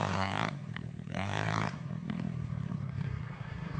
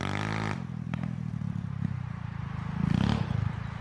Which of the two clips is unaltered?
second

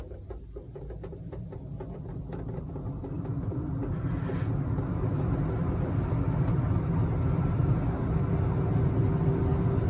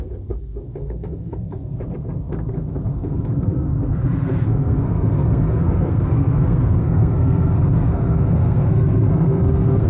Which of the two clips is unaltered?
first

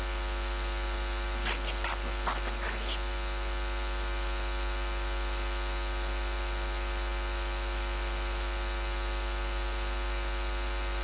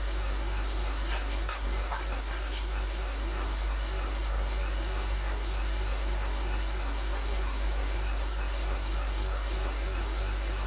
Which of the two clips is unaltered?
first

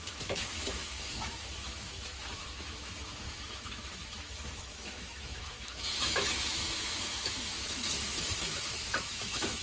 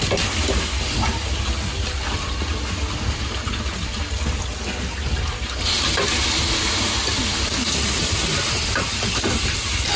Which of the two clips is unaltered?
second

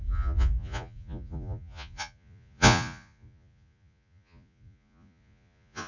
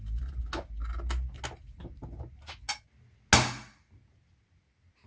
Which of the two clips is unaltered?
second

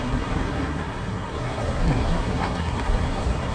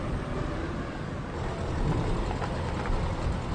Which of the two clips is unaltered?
second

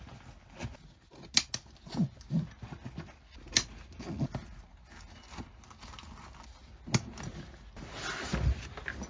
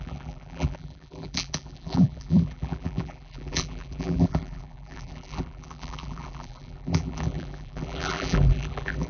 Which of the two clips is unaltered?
first